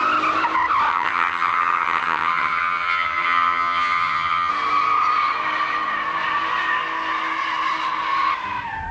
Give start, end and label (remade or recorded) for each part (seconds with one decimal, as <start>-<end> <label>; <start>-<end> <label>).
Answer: 0.0-0.9 recorded; 0.9-4.5 remade; 4.5-8.9 recorded